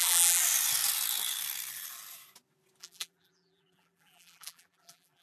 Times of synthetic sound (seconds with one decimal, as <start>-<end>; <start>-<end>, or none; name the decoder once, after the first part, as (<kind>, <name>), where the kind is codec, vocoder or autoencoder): 0.0-0.4 (vocoder, BigVGAN v2); 2.8-5.2